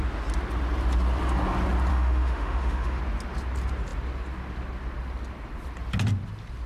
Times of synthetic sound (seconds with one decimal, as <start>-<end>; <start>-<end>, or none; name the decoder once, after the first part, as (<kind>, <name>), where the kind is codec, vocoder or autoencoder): 1.9-3.0 (autoencoder, DAC-VAE)